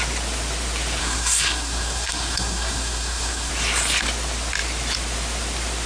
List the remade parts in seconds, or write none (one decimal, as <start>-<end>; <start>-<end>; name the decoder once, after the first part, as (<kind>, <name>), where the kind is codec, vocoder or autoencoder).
1.0-3.5 (codec, SNAC)